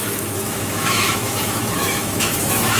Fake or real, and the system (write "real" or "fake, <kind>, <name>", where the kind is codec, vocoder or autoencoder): fake, autoencoder, DAC-VAE